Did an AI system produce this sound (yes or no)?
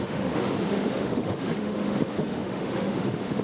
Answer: yes